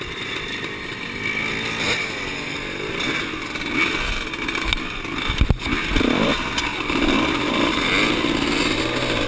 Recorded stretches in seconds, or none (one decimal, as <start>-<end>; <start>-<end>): 0.0-9.3